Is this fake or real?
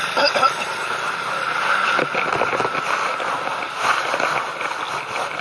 real